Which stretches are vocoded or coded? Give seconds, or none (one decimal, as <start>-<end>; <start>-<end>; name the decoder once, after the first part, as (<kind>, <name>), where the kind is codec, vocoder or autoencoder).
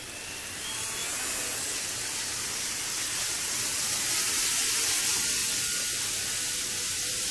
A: none